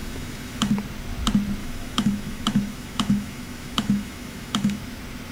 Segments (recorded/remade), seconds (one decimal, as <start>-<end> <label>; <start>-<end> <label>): 0.0-0.7 remade; 0.7-1.6 recorded; 1.6-4.8 remade; 4.8-5.3 recorded